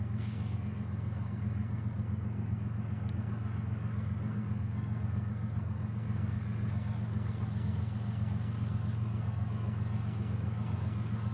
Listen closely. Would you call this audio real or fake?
fake